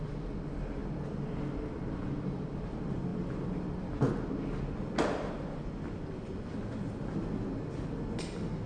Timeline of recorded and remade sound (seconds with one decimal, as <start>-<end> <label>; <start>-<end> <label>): 0.0-8.7 recorded